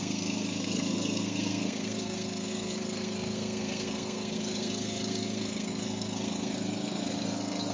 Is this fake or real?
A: fake